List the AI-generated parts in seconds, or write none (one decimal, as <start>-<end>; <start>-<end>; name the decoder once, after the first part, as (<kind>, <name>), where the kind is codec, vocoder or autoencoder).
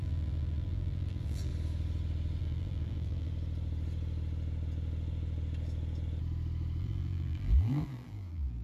0.0-1.5 (vocoder, BigVGAN v2); 2.4-3.3; 6.8-8.6